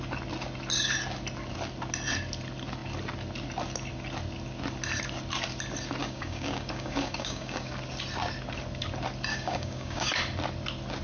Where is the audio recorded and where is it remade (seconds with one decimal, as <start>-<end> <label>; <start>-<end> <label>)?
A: 0.0-6.0 recorded; 6.0-7.7 remade; 7.7-9.3 recorded; 9.3-10.1 remade; 10.1-11.0 recorded